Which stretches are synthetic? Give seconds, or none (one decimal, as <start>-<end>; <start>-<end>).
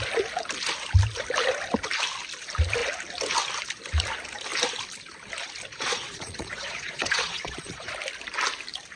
5.7-7.9